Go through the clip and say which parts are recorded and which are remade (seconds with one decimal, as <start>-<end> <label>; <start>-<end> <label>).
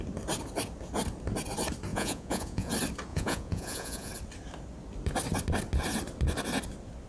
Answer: 0.0-1.9 recorded; 1.9-2.7 remade; 2.7-3.1 recorded; 3.1-4.1 remade; 4.1-7.1 recorded